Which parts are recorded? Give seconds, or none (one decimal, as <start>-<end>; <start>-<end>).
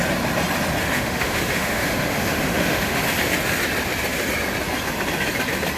0.0-0.8; 3.0-5.8